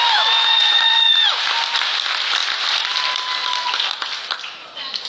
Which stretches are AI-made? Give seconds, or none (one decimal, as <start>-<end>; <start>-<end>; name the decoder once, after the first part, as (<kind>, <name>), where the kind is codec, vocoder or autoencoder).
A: 0.5-1.4 (vocoder, Vocos)